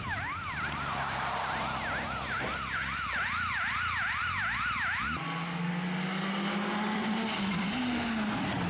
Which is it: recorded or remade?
recorded